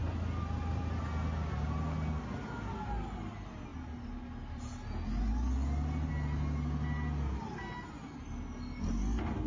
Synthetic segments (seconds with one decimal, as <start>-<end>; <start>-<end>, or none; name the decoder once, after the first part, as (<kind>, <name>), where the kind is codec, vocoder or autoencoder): none